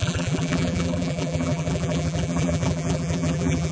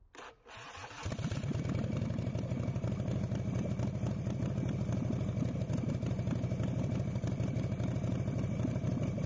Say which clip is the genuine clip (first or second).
second